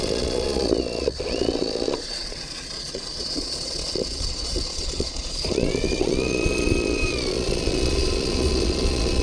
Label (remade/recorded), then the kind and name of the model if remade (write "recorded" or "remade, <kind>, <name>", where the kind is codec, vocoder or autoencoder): remade, vocoder, Vocos